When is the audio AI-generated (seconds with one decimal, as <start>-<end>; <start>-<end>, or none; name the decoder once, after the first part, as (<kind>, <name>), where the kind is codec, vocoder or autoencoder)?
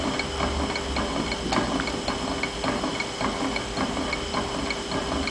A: none